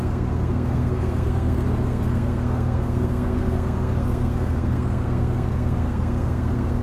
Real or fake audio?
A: fake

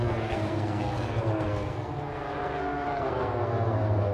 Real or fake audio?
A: fake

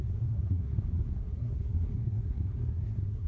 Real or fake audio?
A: fake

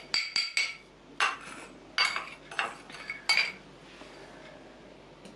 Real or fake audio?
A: real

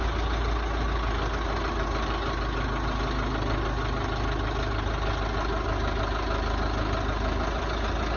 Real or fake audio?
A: real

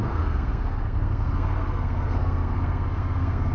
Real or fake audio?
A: fake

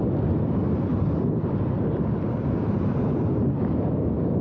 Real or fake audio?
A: real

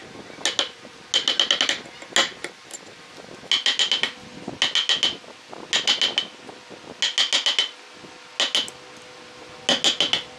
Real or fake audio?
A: real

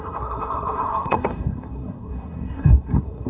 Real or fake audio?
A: fake